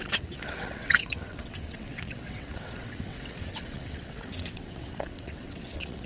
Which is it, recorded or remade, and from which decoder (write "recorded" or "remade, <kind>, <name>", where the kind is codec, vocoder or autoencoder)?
remade, vocoder, WaveNeXt